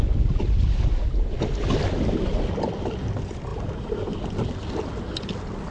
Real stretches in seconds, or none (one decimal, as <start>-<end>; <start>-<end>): 0.0-5.7